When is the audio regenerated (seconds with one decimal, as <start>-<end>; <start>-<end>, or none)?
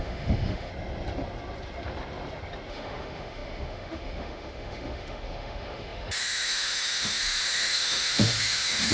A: 0.0-0.7; 2.7-8.9